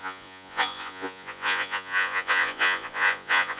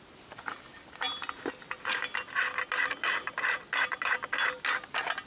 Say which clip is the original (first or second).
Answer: second